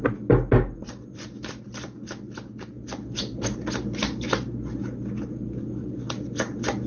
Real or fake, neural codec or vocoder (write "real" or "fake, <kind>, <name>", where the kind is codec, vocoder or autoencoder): real